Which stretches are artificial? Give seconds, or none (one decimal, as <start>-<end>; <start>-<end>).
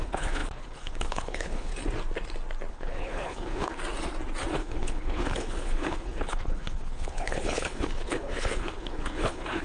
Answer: 0.0-1.7; 2.7-3.8; 4.6-9.6